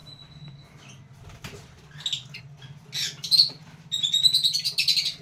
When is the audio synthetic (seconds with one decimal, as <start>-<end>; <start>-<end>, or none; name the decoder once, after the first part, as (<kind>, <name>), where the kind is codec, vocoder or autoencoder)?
none